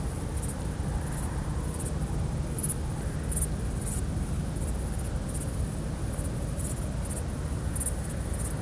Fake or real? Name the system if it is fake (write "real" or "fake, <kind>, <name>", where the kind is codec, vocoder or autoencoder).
real